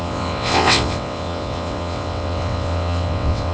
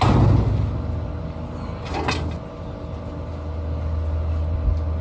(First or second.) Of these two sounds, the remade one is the first